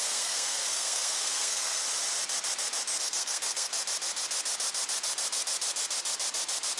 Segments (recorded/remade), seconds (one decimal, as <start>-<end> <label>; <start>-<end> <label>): 0.0-1.8 remade; 1.8-3.0 recorded; 3.0-3.7 remade; 3.7-6.8 recorded